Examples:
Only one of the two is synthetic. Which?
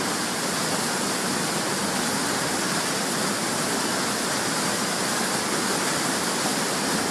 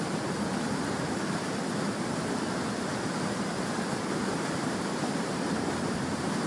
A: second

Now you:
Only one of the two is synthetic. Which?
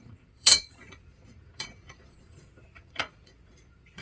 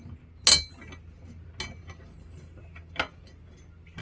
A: first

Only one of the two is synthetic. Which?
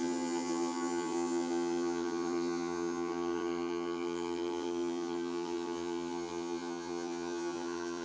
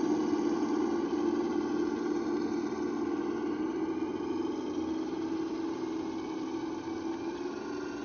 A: first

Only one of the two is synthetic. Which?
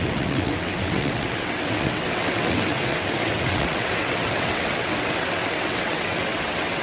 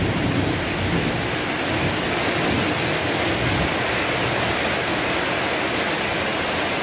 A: first